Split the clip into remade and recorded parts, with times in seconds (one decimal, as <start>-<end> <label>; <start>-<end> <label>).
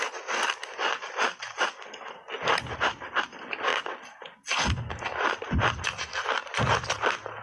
0.0-7.4 recorded